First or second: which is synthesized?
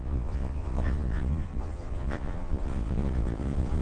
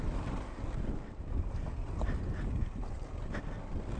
first